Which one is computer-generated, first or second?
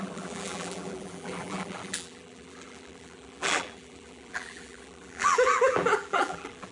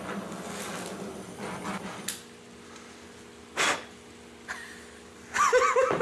first